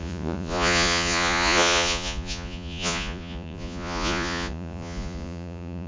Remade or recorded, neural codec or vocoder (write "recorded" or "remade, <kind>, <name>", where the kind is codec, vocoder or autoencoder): remade, vocoder, Vocos